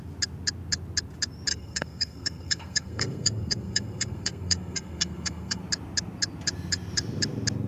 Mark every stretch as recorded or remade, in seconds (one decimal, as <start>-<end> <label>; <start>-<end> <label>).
0.0-1.5 recorded; 1.5-5.6 remade; 5.6-7.7 recorded